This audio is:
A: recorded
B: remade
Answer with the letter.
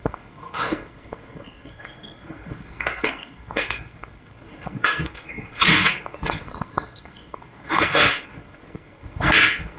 B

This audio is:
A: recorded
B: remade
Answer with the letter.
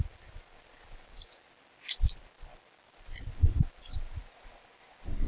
A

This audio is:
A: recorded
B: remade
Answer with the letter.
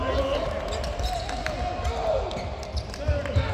A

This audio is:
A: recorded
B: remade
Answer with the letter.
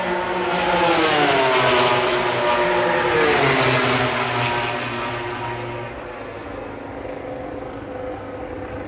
A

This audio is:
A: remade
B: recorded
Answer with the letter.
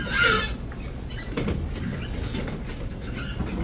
B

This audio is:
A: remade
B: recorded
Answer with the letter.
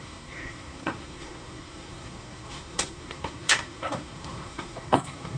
A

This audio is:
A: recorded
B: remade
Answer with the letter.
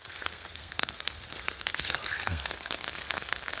B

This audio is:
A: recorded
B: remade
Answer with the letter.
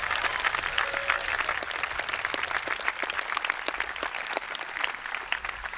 A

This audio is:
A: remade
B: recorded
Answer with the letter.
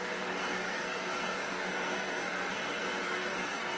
A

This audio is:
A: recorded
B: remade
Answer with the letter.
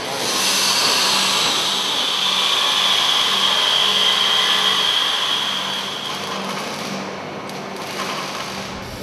A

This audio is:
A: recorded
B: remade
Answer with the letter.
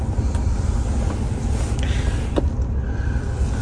A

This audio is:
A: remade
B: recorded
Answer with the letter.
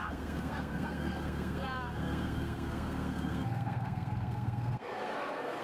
A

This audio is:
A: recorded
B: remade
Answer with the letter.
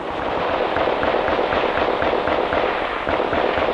A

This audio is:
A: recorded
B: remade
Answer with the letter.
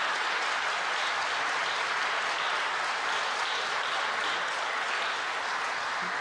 A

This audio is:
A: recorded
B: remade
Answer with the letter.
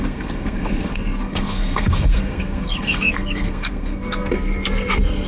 B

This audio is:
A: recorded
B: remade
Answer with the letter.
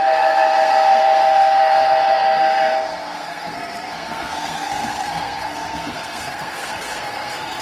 B